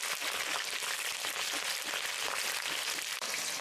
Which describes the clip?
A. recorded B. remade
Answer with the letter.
A